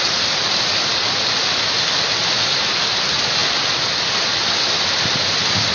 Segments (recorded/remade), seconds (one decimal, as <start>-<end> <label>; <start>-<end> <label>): 0.0-5.7 recorded